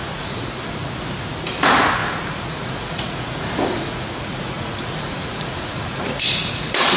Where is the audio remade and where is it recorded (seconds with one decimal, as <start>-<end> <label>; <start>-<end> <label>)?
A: 0.0-0.6 remade; 0.6-2.0 recorded; 2.0-6.2 remade; 6.2-7.0 recorded